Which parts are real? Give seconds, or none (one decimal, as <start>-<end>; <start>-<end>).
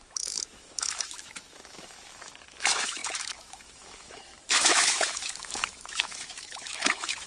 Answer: none